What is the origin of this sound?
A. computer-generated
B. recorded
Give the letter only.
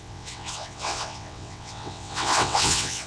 A